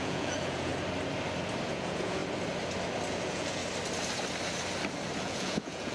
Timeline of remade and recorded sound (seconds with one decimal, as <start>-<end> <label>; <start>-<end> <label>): 0.0-0.7 remade; 0.7-1.7 recorded; 1.7-2.2 remade; 2.2-3.2 recorded; 3.2-3.6 remade; 3.6-5.2 recorded; 5.2-5.9 remade